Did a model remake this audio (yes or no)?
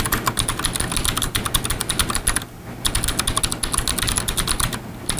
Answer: no